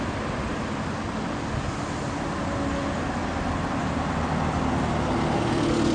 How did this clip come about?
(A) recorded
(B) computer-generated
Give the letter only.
A